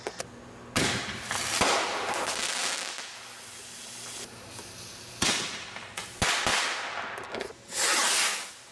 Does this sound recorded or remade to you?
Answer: recorded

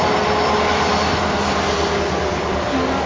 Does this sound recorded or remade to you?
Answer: recorded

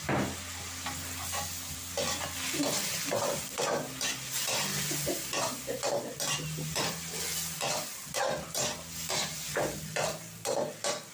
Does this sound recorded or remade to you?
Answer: recorded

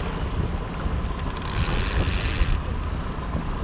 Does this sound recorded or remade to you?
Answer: recorded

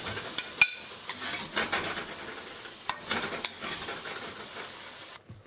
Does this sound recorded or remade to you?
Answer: recorded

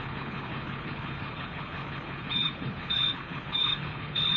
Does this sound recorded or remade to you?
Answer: remade